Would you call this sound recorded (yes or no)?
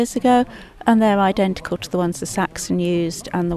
yes